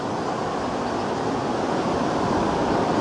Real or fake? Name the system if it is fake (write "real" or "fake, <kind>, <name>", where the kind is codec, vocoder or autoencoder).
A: real